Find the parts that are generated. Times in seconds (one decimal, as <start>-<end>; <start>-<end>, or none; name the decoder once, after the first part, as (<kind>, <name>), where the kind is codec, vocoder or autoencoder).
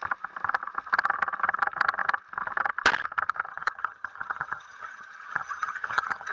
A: 3.5-6.3 (vocoder, HiFi-GAN)